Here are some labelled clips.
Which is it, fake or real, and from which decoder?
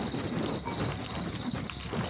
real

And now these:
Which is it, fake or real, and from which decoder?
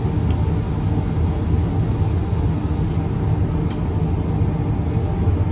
real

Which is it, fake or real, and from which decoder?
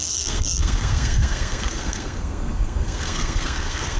fake, codec, SNAC